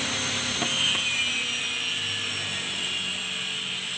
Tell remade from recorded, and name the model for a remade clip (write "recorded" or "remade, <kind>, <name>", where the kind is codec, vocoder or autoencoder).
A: recorded